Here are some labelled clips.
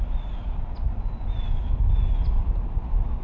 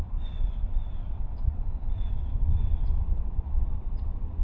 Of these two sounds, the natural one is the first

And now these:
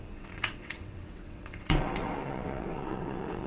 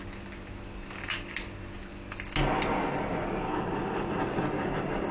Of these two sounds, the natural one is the second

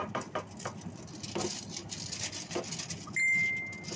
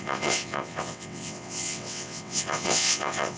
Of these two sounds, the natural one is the first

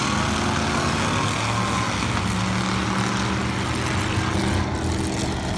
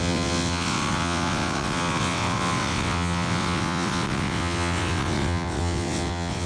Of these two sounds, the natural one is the first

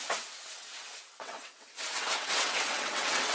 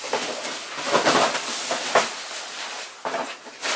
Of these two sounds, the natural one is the second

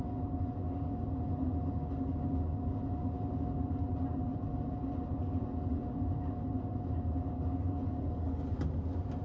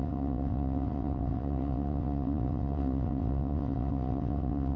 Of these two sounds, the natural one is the first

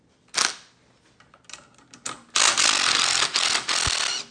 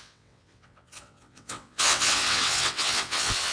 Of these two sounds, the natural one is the first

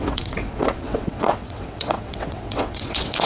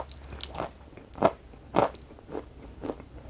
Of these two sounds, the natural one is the second